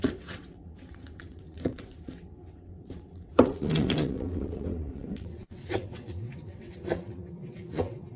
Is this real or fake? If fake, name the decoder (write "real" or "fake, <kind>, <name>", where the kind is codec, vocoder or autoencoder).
fake, vocoder, WaveNeXt